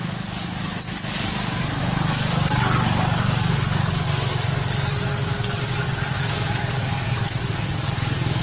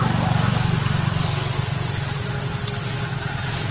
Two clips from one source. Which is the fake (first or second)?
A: first